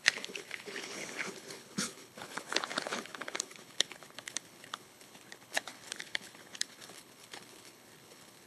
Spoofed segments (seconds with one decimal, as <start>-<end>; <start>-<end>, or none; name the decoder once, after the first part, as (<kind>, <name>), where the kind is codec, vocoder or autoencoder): 0.0-8.5 (codec, HILCodec)